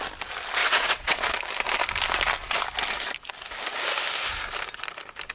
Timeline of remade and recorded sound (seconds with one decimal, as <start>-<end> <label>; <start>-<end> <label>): 0.0-0.6 recorded; 0.6-1.2 remade; 1.2-5.3 recorded